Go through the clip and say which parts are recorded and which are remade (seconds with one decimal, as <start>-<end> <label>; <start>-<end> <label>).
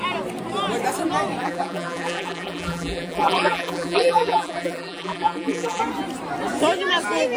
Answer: 0.0-1.4 recorded; 1.4-5.8 remade; 5.8-7.4 recorded